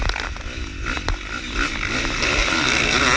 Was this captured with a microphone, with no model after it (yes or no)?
yes